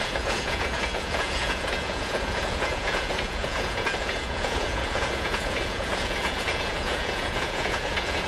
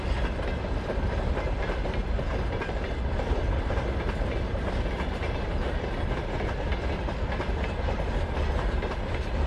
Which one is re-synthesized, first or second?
first